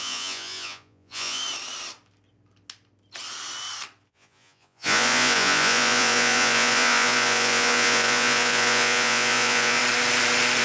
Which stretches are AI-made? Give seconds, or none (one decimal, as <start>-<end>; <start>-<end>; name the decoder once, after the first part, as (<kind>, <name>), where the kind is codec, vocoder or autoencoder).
0.0-1.4 (vocoder, Vocos); 4.1-9.8